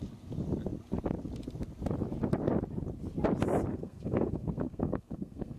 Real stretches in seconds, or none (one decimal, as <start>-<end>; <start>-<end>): 0.0-3.7